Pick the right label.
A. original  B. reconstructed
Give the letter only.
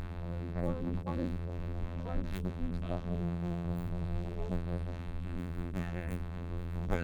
B